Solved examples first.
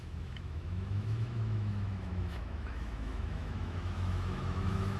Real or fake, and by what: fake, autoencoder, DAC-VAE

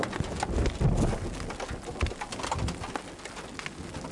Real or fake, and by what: real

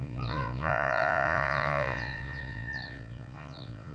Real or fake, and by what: fake, vocoder, Vocos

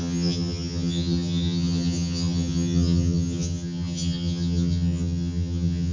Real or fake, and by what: fake, vocoder, HiFi-GAN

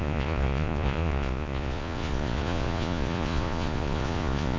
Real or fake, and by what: fake, vocoder, Vocos